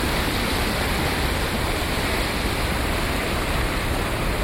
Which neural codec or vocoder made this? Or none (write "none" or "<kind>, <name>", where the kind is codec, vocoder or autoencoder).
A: none